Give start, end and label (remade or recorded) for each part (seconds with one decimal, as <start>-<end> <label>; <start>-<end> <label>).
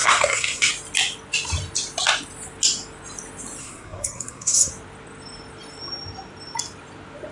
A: 0.0-0.7 remade; 0.7-3.6 recorded; 3.6-4.7 remade; 4.7-7.3 recorded